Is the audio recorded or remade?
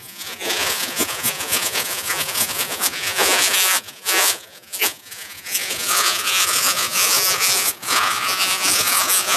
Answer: remade